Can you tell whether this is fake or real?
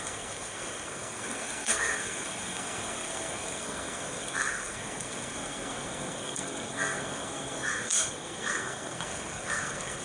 fake